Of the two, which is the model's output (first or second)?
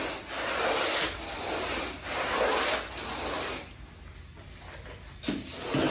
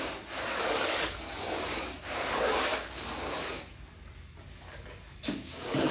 second